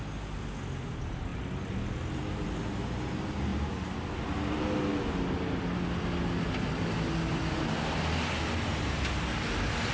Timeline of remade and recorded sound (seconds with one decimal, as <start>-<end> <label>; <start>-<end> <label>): 0.0-9.9 recorded